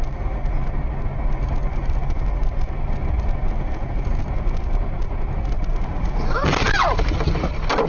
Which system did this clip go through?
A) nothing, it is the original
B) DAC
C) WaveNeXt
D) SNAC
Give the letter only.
A